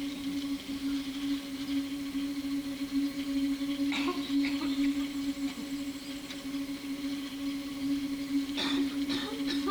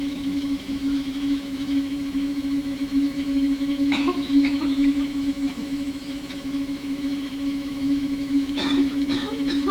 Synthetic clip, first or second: second